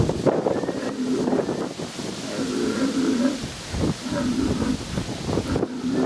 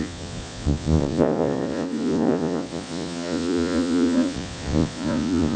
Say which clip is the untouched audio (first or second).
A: first